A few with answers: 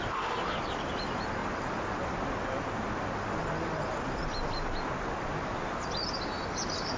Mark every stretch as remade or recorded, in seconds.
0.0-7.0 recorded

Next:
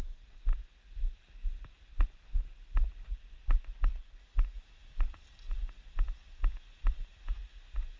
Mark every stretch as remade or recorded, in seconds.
0.0-8.0 recorded

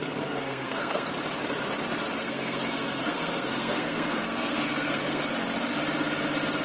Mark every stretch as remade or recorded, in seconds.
0.0-1.1 remade; 1.1-2.2 recorded; 2.2-5.2 remade; 5.2-6.6 recorded

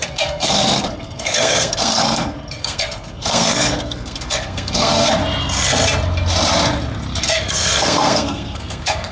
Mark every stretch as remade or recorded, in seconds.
0.0-5.2 remade; 5.2-7.2 recorded; 7.2-9.1 remade

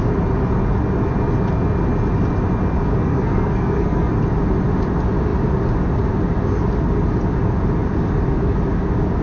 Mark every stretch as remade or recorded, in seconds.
0.0-2.9 recorded; 2.9-4.1 remade; 4.1-9.2 recorded

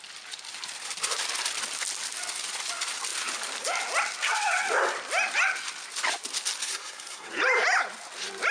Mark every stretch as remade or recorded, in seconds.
0.0-6.6 recorded; 6.6-7.3 remade; 7.3-8.5 recorded

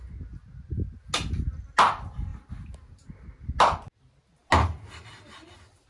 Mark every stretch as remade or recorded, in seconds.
0.0-5.9 recorded